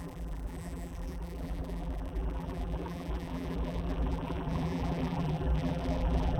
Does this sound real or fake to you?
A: fake